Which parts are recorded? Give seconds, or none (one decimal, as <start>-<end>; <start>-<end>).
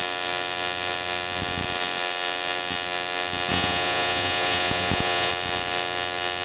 0.0-3.5; 5.3-6.4